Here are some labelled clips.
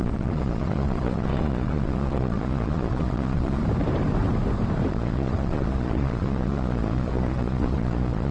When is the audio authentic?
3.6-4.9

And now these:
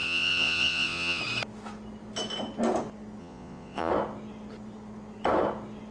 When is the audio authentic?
1.2-3.2; 3.9-5.9

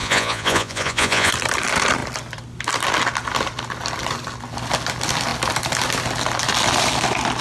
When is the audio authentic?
1.3-7.4